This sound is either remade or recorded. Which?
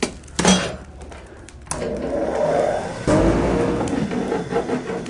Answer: recorded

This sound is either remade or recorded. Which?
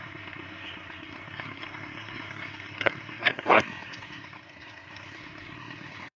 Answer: remade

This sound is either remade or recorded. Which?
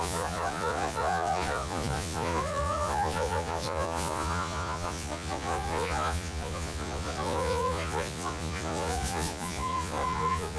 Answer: remade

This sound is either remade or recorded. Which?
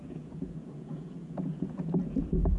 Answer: remade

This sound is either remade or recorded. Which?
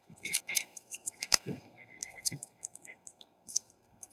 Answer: remade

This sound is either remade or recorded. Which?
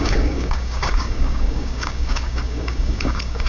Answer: remade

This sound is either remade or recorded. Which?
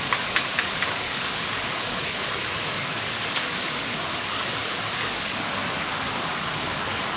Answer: remade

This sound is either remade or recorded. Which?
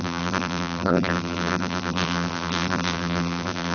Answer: remade